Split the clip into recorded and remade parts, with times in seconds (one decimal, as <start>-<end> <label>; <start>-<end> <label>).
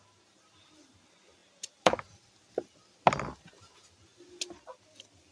0.0-5.3 recorded